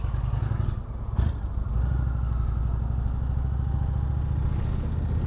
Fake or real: real